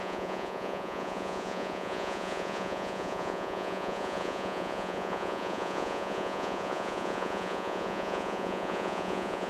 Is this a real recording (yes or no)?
no